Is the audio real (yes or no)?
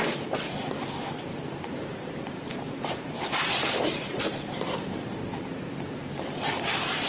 no